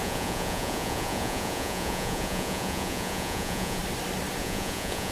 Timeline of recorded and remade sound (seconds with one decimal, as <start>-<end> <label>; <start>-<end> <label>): 0.0-3.8 remade; 3.8-4.4 recorded; 4.4-5.1 remade